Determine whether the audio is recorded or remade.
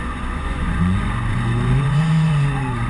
remade